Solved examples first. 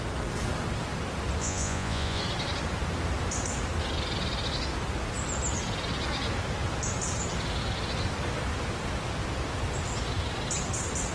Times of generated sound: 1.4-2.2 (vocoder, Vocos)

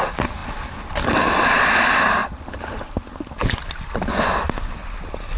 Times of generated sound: none

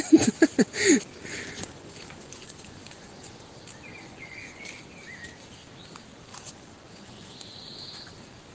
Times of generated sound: 1.3-3.4 (vocoder, Vocos); 3.9-4.6; 6.3-8.5

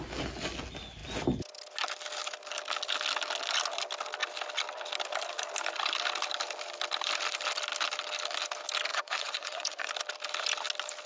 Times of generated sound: 8.9-9.9 (vocoder, Vocos)

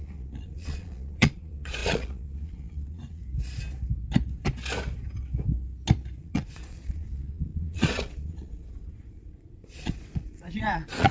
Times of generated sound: 0.0-3.2 (vocoder, Vocos); 6.2-11.1